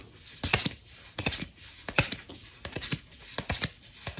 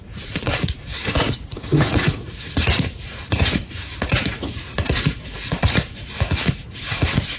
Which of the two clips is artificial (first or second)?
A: second